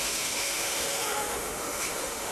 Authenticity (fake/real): fake